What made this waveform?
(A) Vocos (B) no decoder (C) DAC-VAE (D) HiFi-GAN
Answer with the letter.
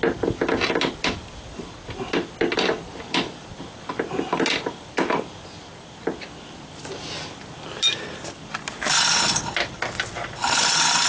B